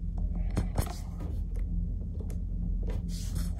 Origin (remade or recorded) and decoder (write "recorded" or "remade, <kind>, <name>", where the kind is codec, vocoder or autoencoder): recorded